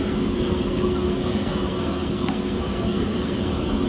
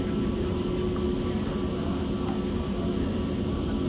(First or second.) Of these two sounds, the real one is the second